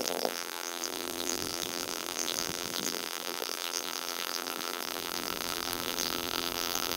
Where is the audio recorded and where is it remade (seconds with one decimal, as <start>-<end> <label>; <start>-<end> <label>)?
0.0-7.0 remade